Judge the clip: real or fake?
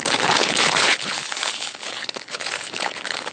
fake